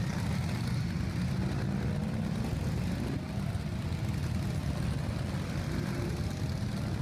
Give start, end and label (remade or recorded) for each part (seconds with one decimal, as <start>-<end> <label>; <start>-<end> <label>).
0.0-7.0 recorded